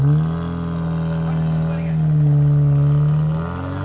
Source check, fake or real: real